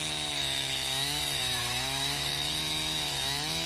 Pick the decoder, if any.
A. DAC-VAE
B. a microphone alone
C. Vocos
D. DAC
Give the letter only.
A